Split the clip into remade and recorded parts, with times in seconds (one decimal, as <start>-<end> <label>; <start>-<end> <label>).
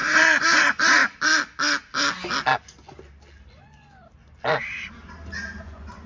0.0-1.0 remade; 1.0-3.6 recorded; 3.6-4.0 remade; 4.0-5.6 recorded; 5.6-6.1 remade